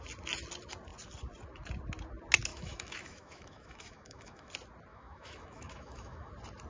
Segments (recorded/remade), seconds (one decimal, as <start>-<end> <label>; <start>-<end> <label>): 0.0-2.5 recorded; 2.5-4.5 remade; 4.5-4.9 recorded; 4.9-6.3 remade; 6.3-6.7 recorded